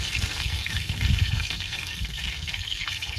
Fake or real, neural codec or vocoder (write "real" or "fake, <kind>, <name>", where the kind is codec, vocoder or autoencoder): fake, codec, SNAC